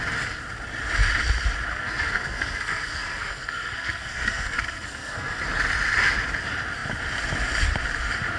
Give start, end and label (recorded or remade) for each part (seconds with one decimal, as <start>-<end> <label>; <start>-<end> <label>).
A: 0.0-1.7 recorded; 1.7-5.4 remade; 5.4-8.4 recorded